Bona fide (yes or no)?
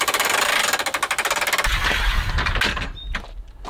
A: yes